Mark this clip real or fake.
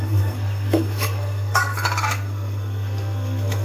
fake